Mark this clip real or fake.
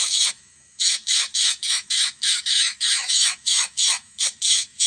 fake